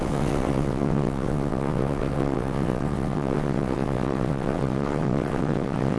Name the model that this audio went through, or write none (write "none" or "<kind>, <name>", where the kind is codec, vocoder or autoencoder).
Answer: vocoder, WaveNeXt